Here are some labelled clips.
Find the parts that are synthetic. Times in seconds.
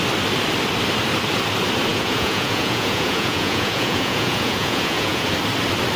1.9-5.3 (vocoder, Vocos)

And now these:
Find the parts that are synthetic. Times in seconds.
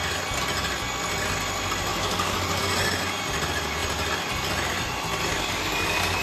1.9-2.6 (codec, DAC); 5.3-6.2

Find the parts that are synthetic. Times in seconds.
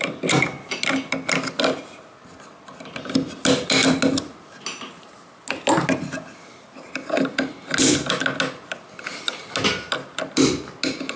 none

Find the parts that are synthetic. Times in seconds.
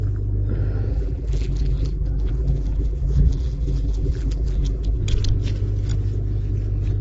0.9-5.0 (vocoder, BigVGAN v2)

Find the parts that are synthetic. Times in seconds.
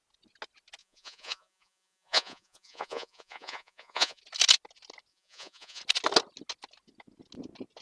0.8-4.2 (vocoder, Vocos); 5.1-5.8